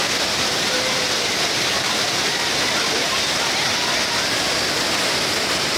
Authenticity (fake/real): real